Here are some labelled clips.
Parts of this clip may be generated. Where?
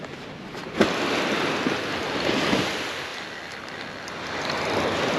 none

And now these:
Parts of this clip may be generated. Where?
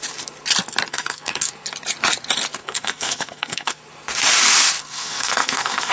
0.9-1.5 (codec, SNAC); 2.6-3.8; 4.8-5.9